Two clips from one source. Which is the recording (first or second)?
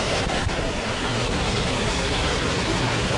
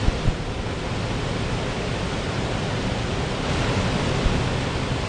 second